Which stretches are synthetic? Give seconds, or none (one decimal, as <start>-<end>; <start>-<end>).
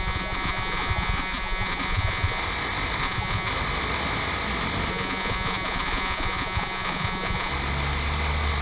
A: 0.0-2.4; 3.0-3.5; 4.9-7.5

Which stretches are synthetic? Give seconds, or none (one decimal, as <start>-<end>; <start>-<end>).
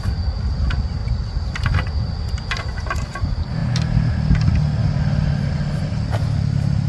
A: none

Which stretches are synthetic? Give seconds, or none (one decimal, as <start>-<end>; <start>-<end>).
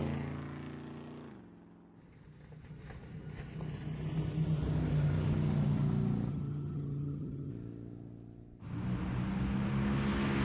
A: 6.3-7.5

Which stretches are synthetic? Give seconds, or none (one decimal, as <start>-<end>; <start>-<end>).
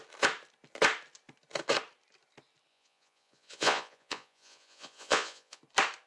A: 2.7-5.6